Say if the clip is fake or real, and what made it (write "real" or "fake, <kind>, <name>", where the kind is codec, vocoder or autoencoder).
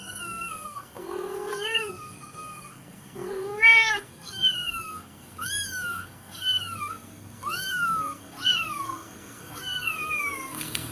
fake, codec, SNAC